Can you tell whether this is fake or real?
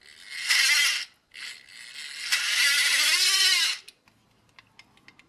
real